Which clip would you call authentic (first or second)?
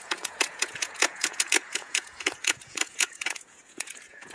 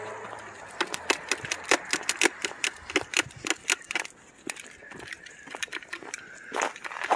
second